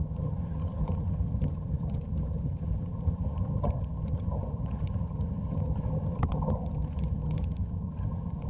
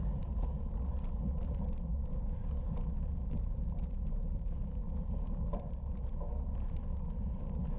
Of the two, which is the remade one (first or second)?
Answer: first